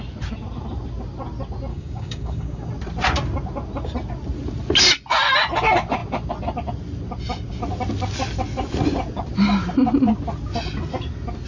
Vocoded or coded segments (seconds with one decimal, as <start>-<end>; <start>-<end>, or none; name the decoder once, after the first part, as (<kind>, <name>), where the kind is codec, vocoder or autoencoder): 1.7-2.7 (codec, DAC)